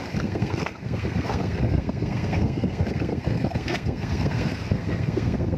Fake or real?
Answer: fake